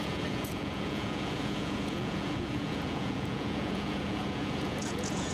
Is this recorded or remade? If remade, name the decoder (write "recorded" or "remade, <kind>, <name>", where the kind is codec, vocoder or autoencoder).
remade, vocoder, Vocos